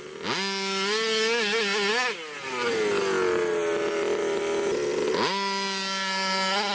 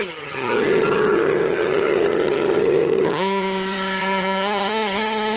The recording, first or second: first